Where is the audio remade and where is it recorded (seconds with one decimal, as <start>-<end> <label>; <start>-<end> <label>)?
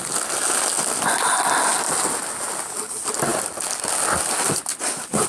0.0-5.3 recorded